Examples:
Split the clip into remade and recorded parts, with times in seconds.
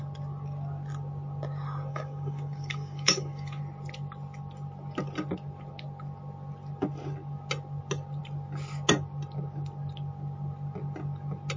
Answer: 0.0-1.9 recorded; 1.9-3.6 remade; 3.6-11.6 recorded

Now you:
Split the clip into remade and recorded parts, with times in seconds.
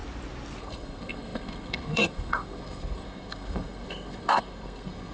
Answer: 0.0-0.6 recorded; 0.6-5.1 remade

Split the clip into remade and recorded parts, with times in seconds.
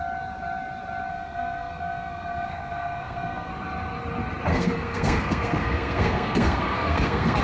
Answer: 0.0-1.1 recorded; 1.1-3.5 remade; 3.5-4.5 recorded; 4.5-7.4 remade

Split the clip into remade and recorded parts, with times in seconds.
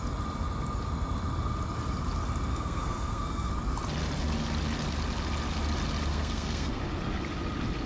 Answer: 0.0-2.5 recorded; 2.5-3.5 remade; 3.5-6.1 recorded; 6.1-6.8 remade; 6.8-7.9 recorded